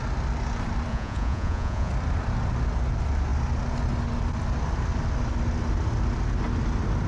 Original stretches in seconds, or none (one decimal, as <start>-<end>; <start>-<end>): 0.0-0.9; 1.9-7.1